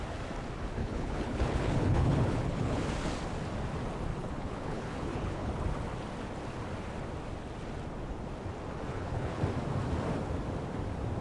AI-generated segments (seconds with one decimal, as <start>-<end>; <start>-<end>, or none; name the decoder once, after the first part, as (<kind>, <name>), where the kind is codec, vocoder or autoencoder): 0.8-2.8 (codec, HILCodec); 4.1-5.5; 8.9-9.4